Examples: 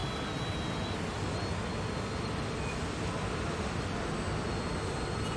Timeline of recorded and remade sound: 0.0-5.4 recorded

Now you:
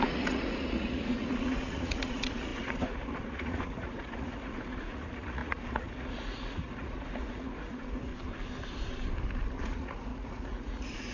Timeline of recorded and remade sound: 0.0-8.1 remade; 8.1-9.6 recorded; 9.6-11.1 remade